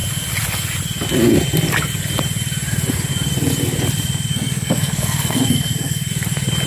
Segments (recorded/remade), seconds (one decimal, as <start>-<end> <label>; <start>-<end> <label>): 0.0-4.3 recorded; 4.3-6.1 remade; 6.1-6.7 recorded